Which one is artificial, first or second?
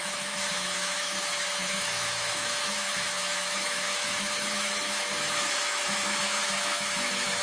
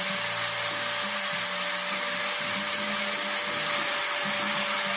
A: first